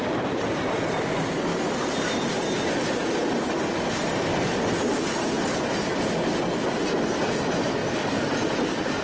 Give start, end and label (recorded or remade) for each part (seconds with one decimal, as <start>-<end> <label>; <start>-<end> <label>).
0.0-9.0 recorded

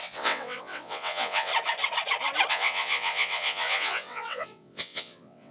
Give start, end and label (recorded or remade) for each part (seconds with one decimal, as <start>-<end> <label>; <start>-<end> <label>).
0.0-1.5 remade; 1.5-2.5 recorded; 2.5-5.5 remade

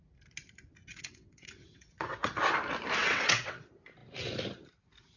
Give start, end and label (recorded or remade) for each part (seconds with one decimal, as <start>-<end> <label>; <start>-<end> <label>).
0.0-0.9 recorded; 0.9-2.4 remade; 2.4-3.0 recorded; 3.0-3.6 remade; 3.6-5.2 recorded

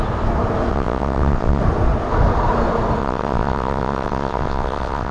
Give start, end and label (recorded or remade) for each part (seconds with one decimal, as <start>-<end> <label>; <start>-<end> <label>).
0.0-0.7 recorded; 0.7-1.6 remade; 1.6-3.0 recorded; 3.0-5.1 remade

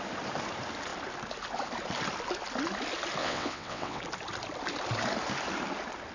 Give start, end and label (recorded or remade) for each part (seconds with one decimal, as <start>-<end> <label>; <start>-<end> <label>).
0.0-3.2 recorded; 3.2-4.0 remade; 4.0-6.1 recorded